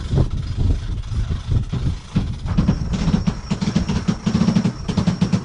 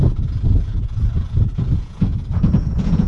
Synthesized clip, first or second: second